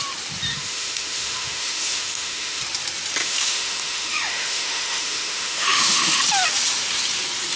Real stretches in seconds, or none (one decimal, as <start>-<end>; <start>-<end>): 0.0-0.5; 2.6-3.2; 6.2-7.6